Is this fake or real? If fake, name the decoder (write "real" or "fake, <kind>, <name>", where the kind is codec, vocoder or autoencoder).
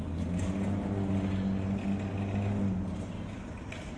real